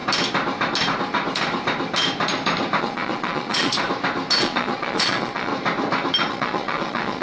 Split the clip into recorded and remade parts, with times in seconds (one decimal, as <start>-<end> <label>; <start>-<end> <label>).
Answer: 0.0-2.8 recorded; 2.8-3.7 remade; 3.7-4.4 recorded; 4.4-5.5 remade; 5.5-6.3 recorded; 6.3-7.2 remade